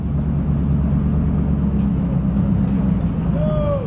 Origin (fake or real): real